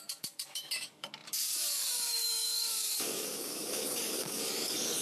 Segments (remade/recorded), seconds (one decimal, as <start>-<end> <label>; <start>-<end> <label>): 0.0-5.0 remade